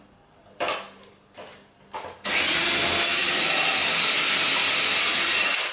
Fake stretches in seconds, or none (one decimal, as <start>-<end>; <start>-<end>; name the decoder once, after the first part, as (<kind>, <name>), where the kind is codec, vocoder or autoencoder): 3.2-4.5 (vocoder, BigVGAN v2)